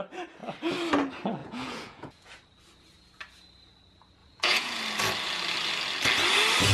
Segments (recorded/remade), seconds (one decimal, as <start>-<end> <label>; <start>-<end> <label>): 0.0-1.4 recorded; 1.4-2.3 remade; 2.3-4.2 recorded; 4.2-4.8 remade; 4.8-6.7 recorded